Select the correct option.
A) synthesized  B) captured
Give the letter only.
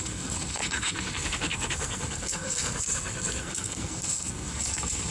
A